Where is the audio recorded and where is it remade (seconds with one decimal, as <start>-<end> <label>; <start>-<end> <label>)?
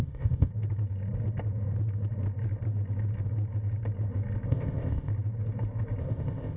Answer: 0.0-0.5 remade; 0.5-4.5 recorded; 4.5-5.1 remade; 5.1-6.0 recorded; 6.0-6.6 remade